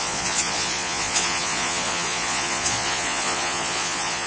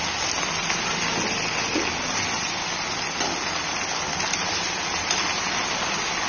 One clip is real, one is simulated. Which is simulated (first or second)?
first